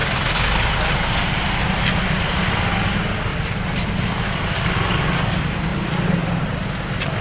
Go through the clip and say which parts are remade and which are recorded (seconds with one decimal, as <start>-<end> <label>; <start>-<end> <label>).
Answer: 0.0-3.3 recorded; 3.3-5.1 remade; 5.1-7.2 recorded